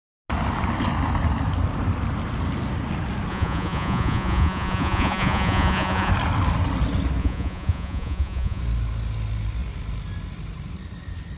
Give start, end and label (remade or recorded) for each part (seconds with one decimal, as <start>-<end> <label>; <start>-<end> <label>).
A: 0.0-3.3 recorded; 3.3-6.1 remade; 6.1-7.2 recorded; 7.2-8.6 remade; 8.6-11.4 recorded